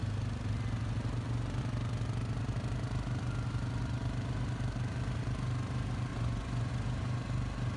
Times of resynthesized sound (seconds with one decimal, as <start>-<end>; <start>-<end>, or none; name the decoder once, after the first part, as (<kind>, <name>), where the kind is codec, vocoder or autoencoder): 6.1-6.7 (vocoder, Vocos)